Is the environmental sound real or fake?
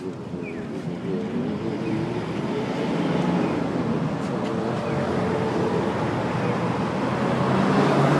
real